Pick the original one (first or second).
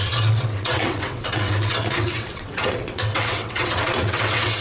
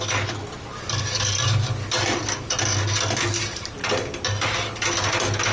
second